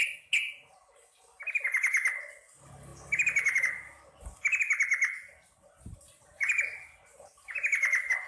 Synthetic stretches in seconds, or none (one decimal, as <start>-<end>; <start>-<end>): none